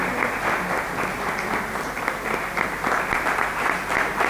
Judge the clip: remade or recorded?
recorded